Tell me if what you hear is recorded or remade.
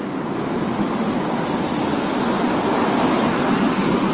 recorded